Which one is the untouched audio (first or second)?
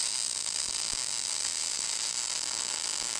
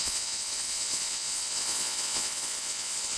first